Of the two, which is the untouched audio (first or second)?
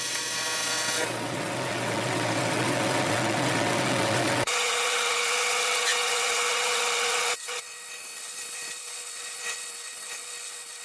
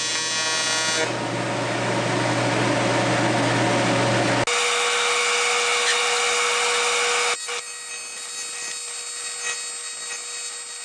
second